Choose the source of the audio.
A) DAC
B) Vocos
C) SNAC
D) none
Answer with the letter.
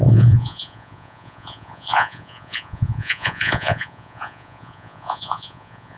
B